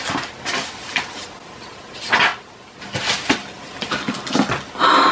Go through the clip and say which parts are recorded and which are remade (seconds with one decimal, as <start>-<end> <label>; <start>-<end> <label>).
0.0-5.1 recorded